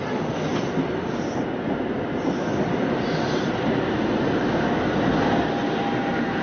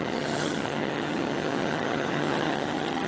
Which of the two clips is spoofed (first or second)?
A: second